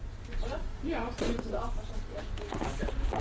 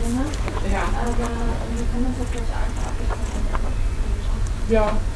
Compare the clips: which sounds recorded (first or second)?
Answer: first